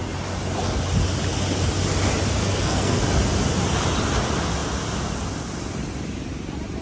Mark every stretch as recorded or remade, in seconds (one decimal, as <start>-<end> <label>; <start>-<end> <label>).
0.0-2.4 recorded; 2.4-3.0 remade; 3.0-6.8 recorded